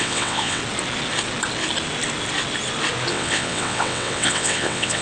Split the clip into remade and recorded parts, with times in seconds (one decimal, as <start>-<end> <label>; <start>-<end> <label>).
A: 0.0-0.6 remade; 0.6-3.1 recorded; 3.1-5.0 remade